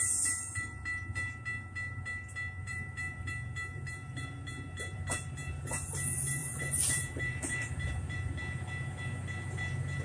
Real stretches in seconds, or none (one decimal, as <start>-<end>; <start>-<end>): 0.0-2.6; 3.3-3.7; 5.7-6.4; 8.3-10.0